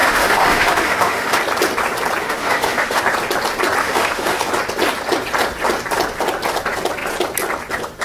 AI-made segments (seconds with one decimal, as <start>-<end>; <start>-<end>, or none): 0.0-1.4; 2.2-3.0; 3.8-4.4